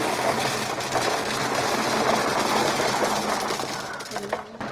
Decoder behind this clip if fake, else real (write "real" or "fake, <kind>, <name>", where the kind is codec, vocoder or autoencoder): real